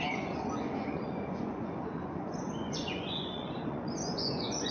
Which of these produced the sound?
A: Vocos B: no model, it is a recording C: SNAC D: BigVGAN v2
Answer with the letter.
A